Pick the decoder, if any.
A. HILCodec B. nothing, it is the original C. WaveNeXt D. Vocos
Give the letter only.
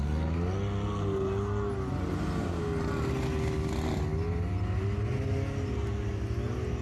B